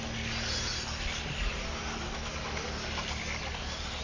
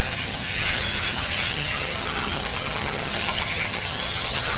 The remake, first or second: second